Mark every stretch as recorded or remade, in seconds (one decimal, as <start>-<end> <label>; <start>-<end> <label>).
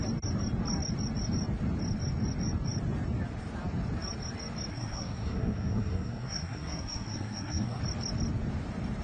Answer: 0.0-4.7 recorded; 4.7-7.8 remade; 7.8-9.0 recorded